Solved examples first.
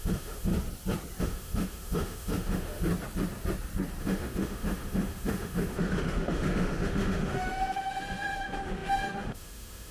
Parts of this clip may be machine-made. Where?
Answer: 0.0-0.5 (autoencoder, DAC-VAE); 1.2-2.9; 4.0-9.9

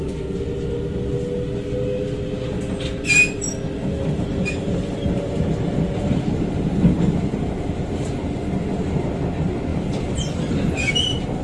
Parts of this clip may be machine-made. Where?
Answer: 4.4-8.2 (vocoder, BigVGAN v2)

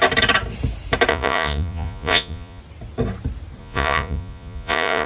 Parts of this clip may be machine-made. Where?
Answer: 1.1-2.6 (vocoder, Vocos); 3.6-5.1

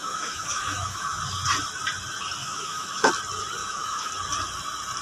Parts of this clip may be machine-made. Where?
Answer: 0.0-1.2 (autoencoder, DAC-VAE); 2.4-3.1; 3.6-4.1

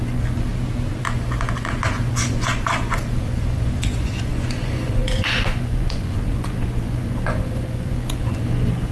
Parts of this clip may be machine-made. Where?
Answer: 0.0-0.5 (vocoder, Vocos); 1.1-8.9

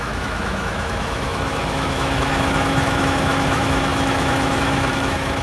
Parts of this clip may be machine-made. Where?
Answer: 0.0-5.4 (autoencoder, DAC-VAE)